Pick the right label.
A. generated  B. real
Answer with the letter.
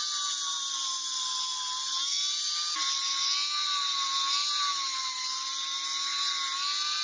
B